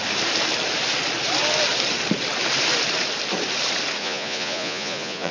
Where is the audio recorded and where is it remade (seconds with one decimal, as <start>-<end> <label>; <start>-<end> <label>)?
0.0-4.0 recorded; 4.0-5.3 remade